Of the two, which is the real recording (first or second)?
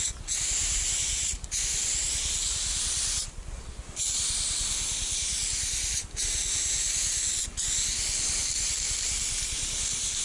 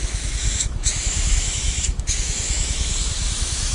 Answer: first